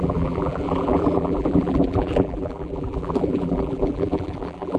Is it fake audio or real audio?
fake